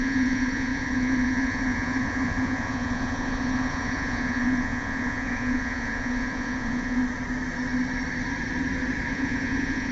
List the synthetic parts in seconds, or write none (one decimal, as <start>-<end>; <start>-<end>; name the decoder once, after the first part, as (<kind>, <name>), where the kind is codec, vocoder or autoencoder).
0.0-7.0 (vocoder, Vocos); 9.1-9.9